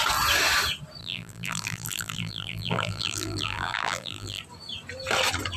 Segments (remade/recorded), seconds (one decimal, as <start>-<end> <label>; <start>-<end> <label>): 0.0-1.0 recorded; 1.0-4.4 remade; 4.4-5.6 recorded